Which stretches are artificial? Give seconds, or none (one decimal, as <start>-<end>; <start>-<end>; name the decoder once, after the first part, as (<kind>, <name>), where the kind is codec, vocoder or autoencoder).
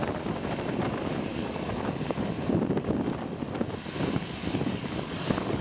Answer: 1.3-2.3 (codec, DAC); 4.4-5.6